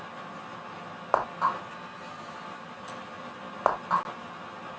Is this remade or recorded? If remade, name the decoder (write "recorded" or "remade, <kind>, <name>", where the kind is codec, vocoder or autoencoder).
recorded